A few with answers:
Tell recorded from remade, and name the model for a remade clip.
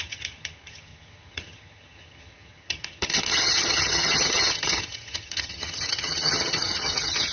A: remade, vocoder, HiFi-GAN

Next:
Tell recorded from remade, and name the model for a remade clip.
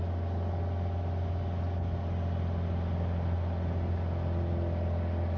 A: recorded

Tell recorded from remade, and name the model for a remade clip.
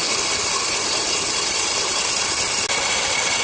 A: recorded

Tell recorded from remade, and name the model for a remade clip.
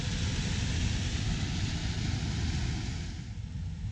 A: recorded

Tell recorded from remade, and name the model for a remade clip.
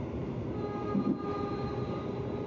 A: remade, vocoder, BigVGAN v2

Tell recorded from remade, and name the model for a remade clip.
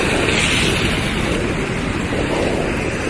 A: recorded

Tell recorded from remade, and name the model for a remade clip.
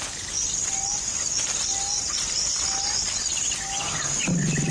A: recorded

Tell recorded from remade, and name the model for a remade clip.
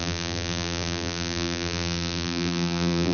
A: remade, vocoder, BigVGAN v2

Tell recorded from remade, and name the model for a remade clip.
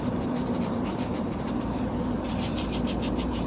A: recorded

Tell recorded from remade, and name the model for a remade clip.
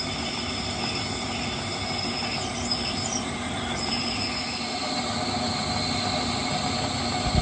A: recorded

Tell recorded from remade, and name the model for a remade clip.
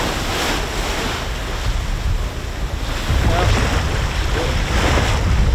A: recorded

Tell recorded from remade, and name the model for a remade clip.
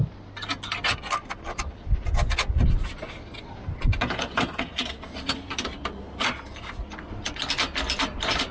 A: recorded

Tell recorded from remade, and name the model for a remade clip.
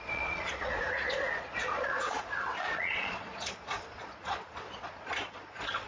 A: remade, vocoder, Vocos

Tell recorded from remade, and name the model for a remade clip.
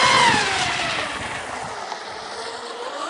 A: recorded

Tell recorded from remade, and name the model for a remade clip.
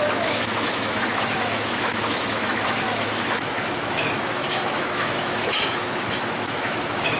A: remade, autoencoder, DAC-VAE